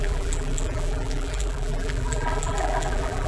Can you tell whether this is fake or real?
fake